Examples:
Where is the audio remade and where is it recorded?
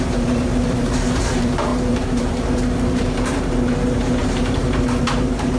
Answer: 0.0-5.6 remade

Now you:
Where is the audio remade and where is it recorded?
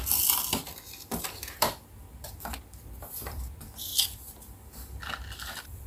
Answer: 0.0-2.0 remade; 2.0-2.8 recorded; 2.8-3.9 remade; 3.9-5.5 recorded; 5.5-5.9 remade